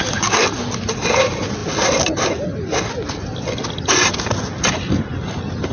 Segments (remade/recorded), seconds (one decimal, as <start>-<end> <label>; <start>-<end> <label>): 0.0-5.7 recorded